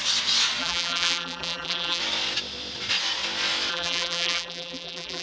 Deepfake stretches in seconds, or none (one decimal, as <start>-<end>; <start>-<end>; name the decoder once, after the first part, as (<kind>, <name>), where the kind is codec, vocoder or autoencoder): 0.6-2.0 (vocoder, BigVGAN v2); 3.7-5.2